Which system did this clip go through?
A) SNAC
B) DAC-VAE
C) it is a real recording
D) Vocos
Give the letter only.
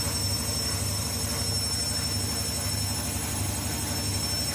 C